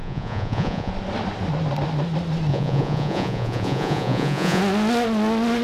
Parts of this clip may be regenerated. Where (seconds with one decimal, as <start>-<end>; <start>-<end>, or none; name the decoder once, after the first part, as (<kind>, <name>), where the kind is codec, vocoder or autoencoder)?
0.0-0.9 (vocoder, Vocos); 2.5-4.6